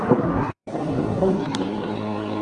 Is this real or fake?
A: fake